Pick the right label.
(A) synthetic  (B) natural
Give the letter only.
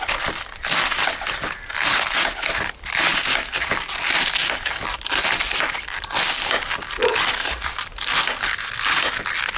B